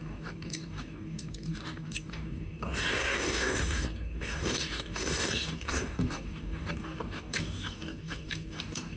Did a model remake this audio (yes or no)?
yes